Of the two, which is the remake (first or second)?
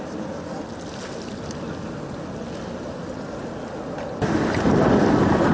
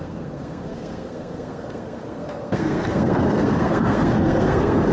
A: second